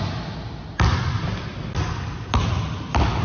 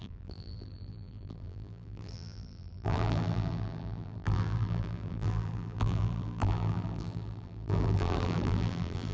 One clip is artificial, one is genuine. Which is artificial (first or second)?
second